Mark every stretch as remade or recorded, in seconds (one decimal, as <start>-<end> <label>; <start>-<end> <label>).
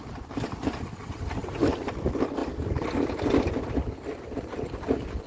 0.0-5.3 recorded